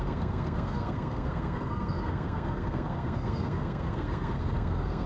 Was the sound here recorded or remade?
remade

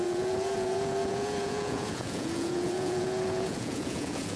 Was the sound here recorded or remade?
remade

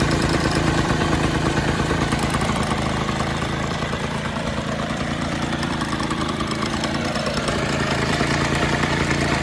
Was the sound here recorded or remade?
remade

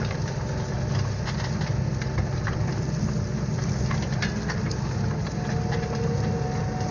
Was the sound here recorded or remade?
recorded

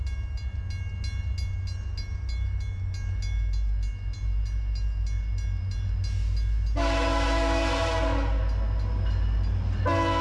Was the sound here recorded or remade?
recorded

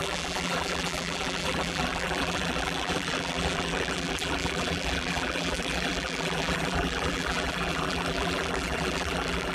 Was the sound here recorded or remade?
remade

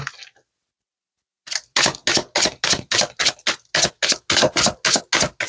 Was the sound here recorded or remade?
recorded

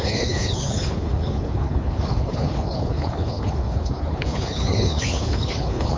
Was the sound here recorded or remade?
remade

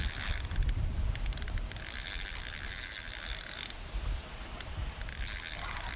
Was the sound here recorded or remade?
recorded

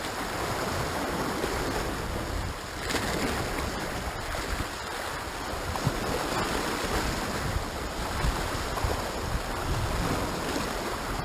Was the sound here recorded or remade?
recorded